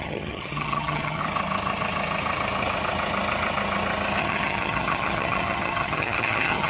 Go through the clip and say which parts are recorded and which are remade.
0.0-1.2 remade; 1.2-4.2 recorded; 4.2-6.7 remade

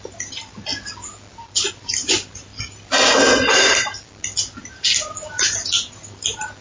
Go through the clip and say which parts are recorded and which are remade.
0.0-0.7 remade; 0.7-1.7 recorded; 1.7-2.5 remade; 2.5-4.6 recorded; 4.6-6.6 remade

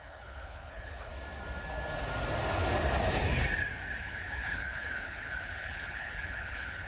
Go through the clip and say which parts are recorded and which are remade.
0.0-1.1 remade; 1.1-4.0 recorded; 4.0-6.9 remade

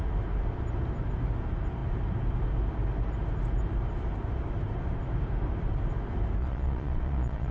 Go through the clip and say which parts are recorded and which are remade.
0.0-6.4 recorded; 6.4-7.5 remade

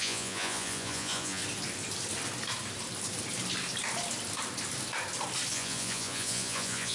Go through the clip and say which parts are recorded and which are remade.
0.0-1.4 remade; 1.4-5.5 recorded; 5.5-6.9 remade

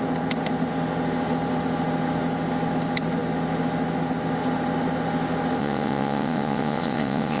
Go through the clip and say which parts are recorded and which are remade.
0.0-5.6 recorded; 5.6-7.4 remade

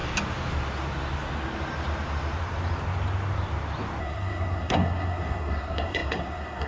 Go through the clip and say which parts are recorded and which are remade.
0.0-4.0 recorded; 4.0-6.7 remade